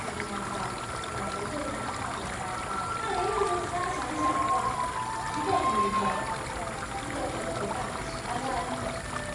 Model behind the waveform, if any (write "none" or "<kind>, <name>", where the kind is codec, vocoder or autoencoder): none